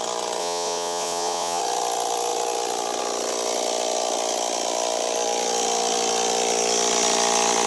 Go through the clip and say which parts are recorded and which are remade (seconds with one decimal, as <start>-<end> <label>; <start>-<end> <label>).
0.0-0.4 recorded; 0.4-1.6 remade; 1.6-7.7 recorded